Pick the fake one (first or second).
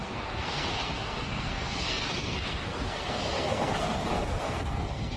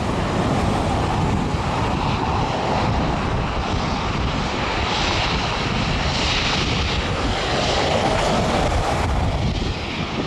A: first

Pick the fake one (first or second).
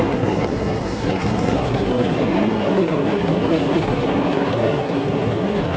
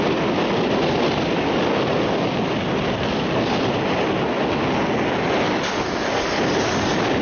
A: first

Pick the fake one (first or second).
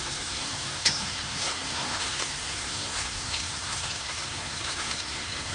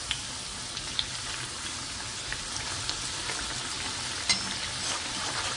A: first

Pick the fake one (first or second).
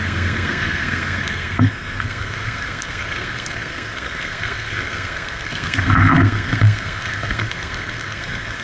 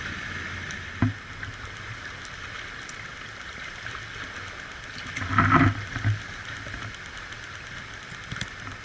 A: first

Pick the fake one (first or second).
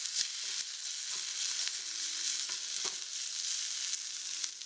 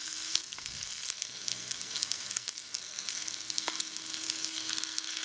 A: second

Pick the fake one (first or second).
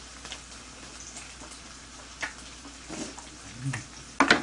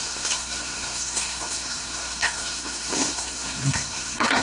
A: second